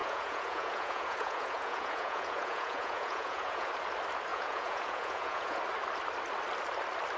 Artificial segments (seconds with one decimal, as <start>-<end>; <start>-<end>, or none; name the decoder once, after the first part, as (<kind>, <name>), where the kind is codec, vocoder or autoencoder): 0.0-3.7 (vocoder, Vocos); 4.3-5.6